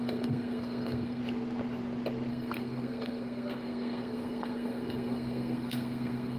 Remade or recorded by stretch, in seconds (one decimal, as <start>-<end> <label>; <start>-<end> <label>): 0.0-1.2 remade; 1.2-2.3 recorded; 2.3-6.4 remade